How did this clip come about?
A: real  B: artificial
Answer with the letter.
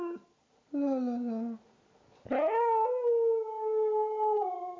A